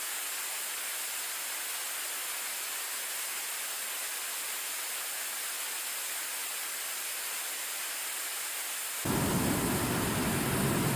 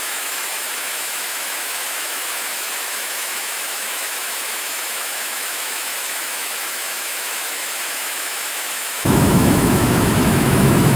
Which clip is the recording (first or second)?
first